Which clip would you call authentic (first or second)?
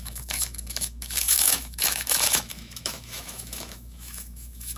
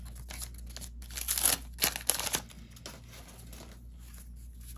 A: second